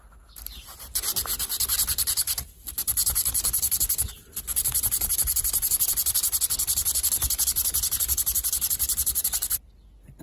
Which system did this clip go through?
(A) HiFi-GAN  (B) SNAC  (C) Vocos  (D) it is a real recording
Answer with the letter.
D